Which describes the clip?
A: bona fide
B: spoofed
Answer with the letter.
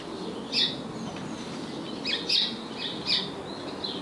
A